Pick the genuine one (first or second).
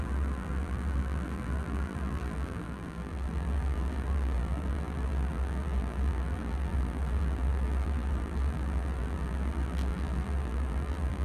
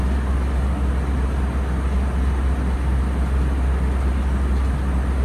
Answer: second